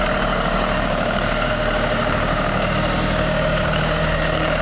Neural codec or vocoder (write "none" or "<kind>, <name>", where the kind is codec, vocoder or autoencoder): codec, DAC